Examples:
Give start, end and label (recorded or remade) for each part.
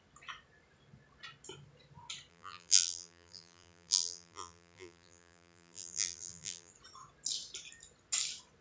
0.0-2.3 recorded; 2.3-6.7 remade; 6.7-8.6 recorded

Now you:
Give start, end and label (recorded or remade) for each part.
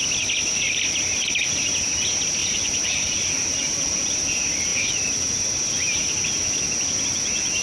0.0-2.4 recorded; 2.4-4.2 remade; 4.2-7.6 recorded